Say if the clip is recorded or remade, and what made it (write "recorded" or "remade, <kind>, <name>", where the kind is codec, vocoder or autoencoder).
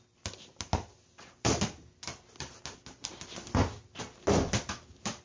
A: recorded